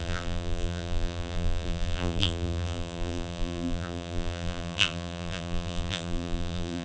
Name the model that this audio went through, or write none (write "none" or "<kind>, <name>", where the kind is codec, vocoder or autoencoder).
vocoder, BigVGAN v2